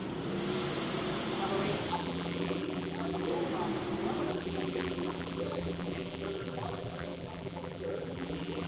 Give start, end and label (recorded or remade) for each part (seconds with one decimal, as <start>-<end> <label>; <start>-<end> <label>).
0.0-1.9 recorded; 1.9-3.3 remade; 3.3-4.3 recorded; 4.3-8.7 remade